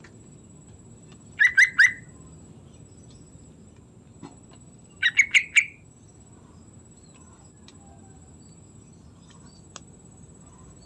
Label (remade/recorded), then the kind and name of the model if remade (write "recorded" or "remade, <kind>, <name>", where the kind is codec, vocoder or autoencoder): recorded